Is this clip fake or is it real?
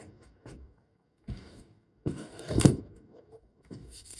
fake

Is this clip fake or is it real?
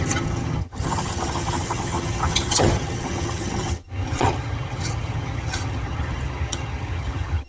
fake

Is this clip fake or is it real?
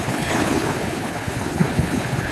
fake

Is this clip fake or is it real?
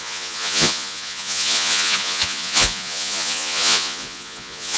fake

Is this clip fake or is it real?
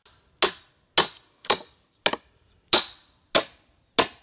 real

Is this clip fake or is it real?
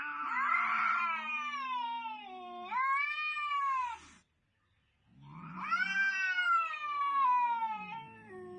real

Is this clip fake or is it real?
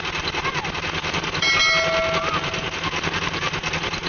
real